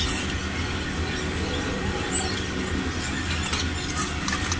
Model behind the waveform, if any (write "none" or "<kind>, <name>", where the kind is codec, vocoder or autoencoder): none